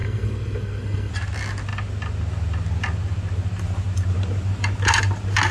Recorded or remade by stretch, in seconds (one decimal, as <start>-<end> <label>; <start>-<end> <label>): 0.0-1.1 remade; 1.1-5.5 recorded